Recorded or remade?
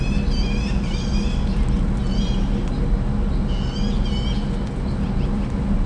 recorded